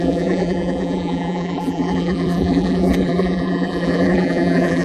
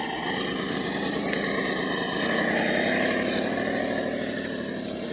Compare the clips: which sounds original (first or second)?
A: second